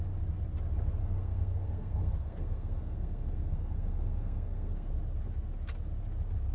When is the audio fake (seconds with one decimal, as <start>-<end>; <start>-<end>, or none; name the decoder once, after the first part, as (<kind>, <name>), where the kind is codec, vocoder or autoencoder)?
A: 1.0-4.9 (codec, SNAC)